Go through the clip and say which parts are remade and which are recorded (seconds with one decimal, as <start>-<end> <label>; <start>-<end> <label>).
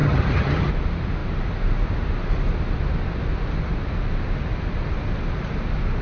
0.0-0.7 remade; 0.7-6.0 recorded